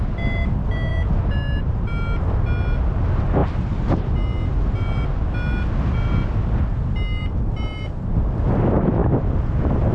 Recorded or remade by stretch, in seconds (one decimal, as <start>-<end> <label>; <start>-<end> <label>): 0.0-9.9 recorded